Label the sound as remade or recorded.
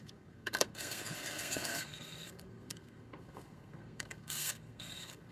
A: remade